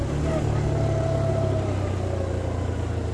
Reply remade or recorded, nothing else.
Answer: recorded